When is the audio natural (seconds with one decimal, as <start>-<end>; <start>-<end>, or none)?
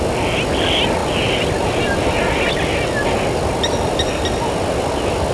0.0-5.3